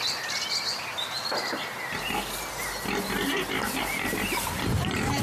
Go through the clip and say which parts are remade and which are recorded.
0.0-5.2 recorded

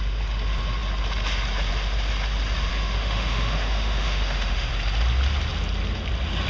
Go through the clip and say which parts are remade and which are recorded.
0.0-2.7 recorded; 2.7-4.7 remade; 4.7-6.5 recorded

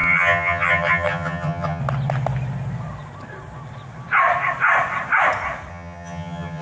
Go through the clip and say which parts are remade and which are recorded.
0.0-1.8 remade; 1.8-5.7 recorded; 5.7-6.6 remade

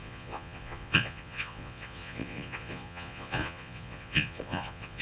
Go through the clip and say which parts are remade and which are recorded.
0.0-5.0 remade